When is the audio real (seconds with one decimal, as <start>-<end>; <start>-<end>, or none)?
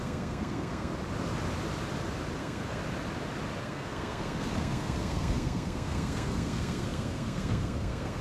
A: 0.9-2.4; 2.8-3.6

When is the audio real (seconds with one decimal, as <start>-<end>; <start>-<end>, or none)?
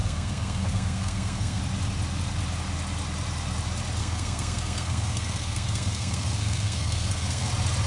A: 1.6-4.0; 7.5-7.9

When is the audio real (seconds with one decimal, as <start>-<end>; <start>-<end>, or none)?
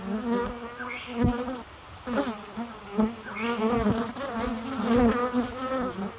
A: 0.0-6.2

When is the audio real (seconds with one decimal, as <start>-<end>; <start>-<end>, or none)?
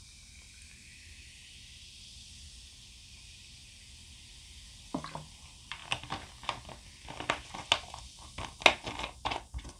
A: 0.0-9.8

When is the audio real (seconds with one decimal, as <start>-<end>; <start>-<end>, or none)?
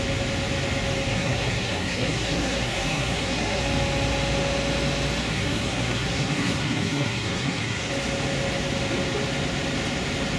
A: 0.0-1.1; 3.6-5.2; 7.9-10.4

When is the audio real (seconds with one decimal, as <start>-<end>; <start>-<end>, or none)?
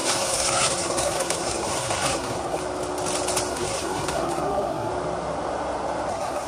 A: 2.6-3.5; 4.9-6.1